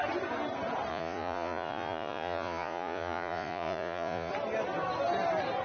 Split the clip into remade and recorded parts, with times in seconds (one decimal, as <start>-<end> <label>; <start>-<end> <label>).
0.0-0.9 recorded; 0.9-4.3 remade; 4.3-5.6 recorded